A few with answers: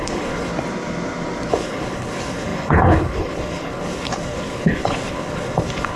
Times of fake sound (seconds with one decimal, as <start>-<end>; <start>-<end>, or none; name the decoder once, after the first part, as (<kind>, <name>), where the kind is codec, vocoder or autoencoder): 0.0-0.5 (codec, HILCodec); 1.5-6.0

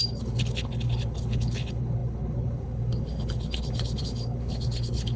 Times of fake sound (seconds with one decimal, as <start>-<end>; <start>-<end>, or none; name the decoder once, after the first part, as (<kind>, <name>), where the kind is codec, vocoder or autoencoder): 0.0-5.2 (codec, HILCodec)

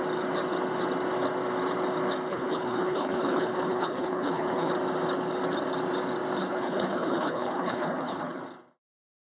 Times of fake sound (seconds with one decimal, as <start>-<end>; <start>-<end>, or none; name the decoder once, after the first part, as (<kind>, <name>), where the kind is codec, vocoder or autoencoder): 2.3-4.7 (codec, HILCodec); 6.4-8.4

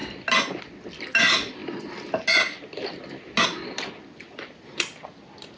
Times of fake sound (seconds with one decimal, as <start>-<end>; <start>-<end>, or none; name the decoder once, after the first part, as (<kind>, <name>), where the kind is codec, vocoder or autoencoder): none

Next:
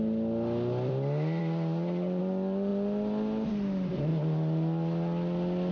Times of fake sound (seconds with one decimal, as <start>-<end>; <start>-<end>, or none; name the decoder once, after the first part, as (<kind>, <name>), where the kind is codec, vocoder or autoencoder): none

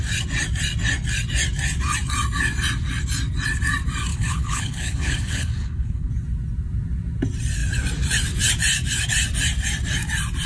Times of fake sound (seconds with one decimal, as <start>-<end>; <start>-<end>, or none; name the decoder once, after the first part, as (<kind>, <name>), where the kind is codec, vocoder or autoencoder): 4.1-6.1 (codec, HILCodec)